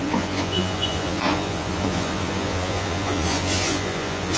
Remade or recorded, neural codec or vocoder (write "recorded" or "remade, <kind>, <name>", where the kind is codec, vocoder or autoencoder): remade, vocoder, Vocos